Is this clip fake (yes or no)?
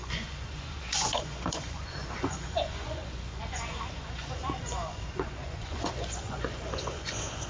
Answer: yes